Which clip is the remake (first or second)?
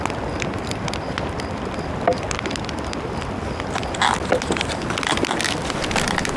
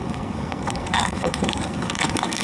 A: second